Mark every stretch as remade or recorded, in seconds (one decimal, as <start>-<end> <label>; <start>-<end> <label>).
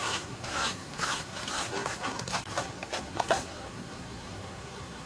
0.0-5.1 remade